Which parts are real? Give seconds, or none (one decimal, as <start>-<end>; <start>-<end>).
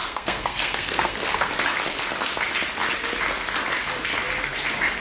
1.5-5.0